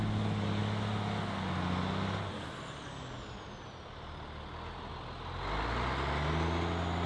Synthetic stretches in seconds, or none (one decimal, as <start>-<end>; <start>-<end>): none